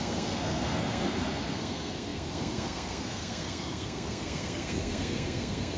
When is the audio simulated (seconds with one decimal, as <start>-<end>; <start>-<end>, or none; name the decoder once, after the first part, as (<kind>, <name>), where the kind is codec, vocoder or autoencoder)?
0.0-5.8 (codec, SNAC)